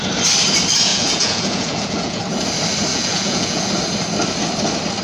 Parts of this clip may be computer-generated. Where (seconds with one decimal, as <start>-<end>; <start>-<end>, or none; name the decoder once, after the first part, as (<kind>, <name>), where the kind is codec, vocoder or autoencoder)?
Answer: 0.9-2.2 (vocoder, Vocos); 2.9-3.7